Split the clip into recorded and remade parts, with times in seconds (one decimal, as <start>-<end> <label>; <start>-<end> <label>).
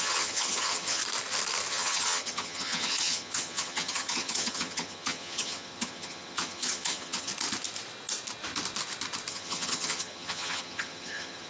0.0-1.0 remade; 1.0-1.7 recorded; 1.7-7.3 remade; 7.3-9.3 recorded; 9.3-11.5 remade